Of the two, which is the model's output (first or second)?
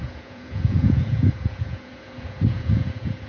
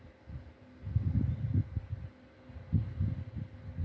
first